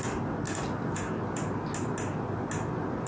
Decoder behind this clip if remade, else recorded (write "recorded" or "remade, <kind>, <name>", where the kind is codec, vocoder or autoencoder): recorded